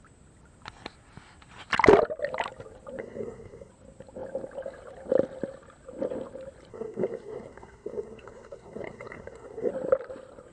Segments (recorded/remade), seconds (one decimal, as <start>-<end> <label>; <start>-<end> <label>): 0.0-3.0 recorded; 3.0-3.7 remade; 3.7-6.7 recorded; 6.7-9.7 remade; 9.7-10.5 recorded